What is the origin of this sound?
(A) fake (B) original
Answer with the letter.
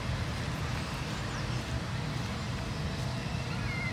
B